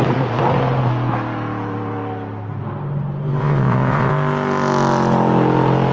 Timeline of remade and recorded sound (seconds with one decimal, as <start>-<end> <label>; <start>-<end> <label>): 0.0-3.4 recorded; 3.4-4.1 remade; 4.1-5.9 recorded